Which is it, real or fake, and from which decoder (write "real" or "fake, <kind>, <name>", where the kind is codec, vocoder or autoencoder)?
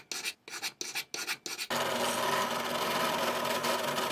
real